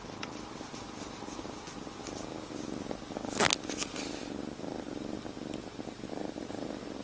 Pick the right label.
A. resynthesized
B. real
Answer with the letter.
B